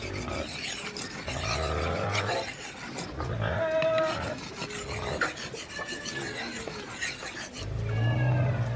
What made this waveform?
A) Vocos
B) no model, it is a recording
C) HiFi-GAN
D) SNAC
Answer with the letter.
B